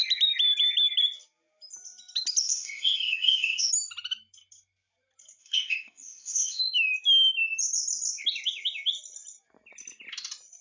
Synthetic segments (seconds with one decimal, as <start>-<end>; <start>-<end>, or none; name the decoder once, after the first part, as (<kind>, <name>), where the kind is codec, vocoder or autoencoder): 2.4-3.7 (codec, ZipCodec); 5.4-6.6